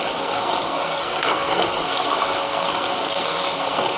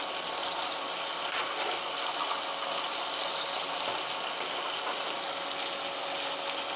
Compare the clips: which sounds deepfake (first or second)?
first